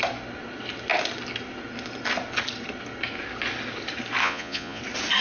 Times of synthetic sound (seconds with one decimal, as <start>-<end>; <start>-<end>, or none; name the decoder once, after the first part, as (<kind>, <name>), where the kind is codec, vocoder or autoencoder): 4.2-4.8 (vocoder, Vocos)